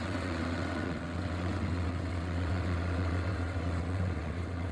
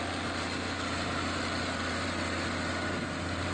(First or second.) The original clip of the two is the second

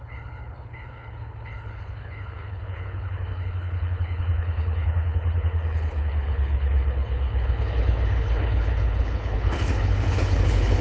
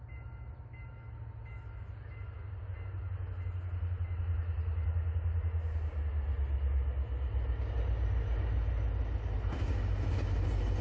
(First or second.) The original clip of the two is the second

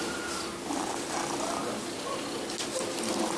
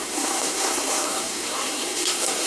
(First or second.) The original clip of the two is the first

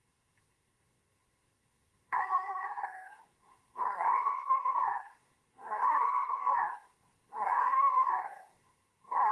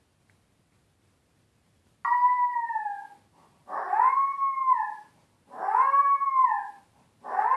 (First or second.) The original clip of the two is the second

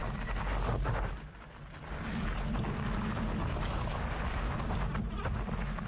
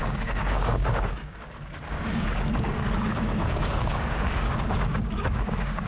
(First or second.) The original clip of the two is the first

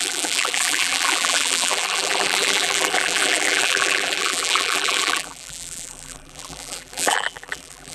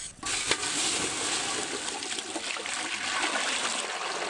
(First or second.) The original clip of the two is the second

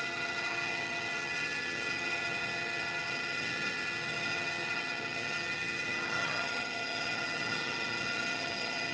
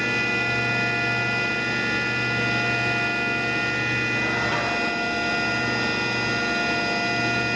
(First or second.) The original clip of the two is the second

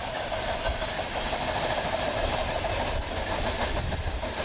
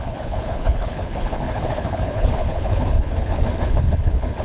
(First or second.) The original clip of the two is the first